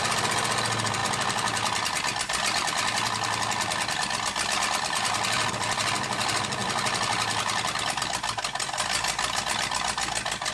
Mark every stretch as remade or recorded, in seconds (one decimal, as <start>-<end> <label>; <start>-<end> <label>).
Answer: 0.0-10.5 recorded